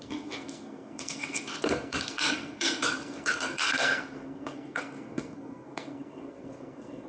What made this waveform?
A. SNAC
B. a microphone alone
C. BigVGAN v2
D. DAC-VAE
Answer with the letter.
A